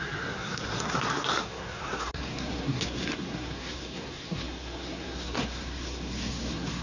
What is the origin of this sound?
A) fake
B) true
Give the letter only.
A